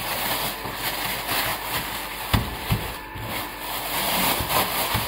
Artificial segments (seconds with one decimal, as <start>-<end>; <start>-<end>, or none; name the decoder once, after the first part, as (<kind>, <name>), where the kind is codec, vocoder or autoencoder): none